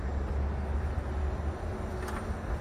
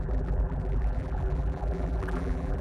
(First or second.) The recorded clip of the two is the first